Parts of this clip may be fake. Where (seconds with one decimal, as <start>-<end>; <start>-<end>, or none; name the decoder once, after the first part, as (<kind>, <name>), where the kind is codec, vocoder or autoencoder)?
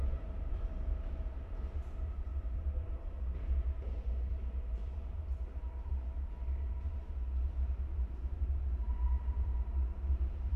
0.5-5.9 (vocoder, BigVGAN v2); 6.7-10.6